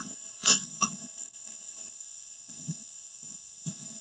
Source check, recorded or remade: remade